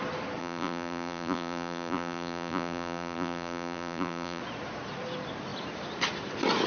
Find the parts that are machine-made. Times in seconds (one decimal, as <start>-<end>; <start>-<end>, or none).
0.4-4.4